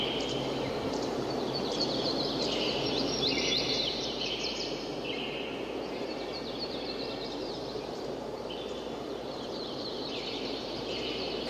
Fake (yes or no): yes